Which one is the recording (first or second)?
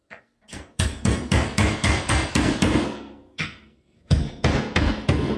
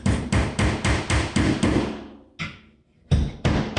second